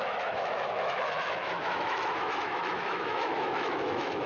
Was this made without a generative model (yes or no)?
no